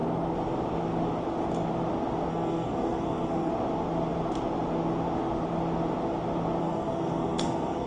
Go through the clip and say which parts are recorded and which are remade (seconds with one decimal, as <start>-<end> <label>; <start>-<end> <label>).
0.0-2.3 recorded; 2.3-3.5 remade; 3.5-6.6 recorded; 6.6-7.9 remade